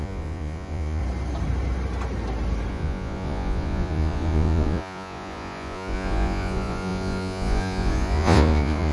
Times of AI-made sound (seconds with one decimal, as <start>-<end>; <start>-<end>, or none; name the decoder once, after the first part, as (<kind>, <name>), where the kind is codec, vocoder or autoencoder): 0.0-1.0 (vocoder, Vocos); 2.7-8.9